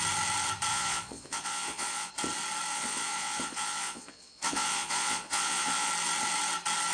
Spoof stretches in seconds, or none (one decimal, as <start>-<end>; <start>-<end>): 0.7-2.1; 2.7-5.9